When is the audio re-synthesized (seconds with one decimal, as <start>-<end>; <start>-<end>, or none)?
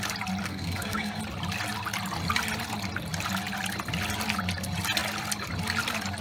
0.4-1.2